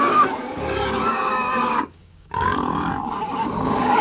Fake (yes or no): yes